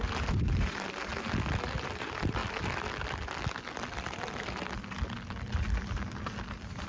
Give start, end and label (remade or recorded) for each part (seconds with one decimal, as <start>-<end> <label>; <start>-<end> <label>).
0.0-1.1 remade; 1.1-2.0 recorded; 2.0-2.4 remade; 2.4-6.5 recorded; 6.5-6.9 remade